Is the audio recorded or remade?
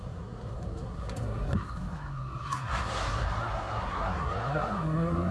remade